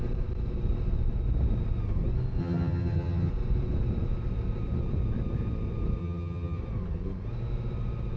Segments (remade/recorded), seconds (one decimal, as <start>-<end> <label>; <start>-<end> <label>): 0.0-2.4 recorded; 2.4-3.3 remade; 3.3-6.0 recorded; 6.0-6.6 remade; 6.6-8.2 recorded